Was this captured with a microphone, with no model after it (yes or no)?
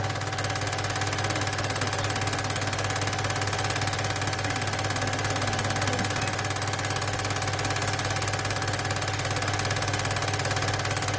yes